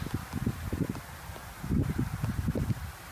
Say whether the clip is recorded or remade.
recorded